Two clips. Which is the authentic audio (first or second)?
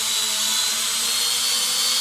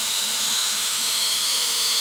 first